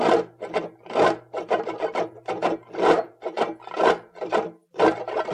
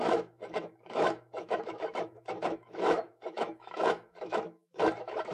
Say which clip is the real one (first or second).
first